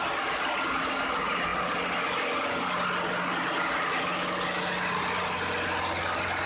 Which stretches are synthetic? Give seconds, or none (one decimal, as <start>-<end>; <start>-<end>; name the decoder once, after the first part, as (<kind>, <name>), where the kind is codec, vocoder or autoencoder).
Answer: none